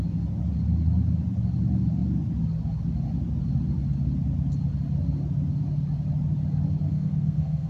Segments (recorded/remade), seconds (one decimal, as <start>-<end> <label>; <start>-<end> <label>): 0.0-6.8 recorded; 6.8-7.7 remade